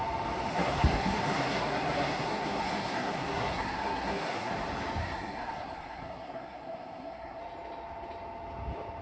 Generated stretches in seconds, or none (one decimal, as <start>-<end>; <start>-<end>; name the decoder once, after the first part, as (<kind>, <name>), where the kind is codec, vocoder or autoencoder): 0.5-4.5 (codec, SNAC); 5.0-7.4